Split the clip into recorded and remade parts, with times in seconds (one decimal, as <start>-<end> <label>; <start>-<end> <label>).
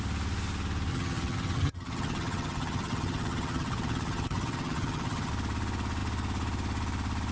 0.0-0.9 recorded; 0.9-5.3 remade; 5.3-7.3 recorded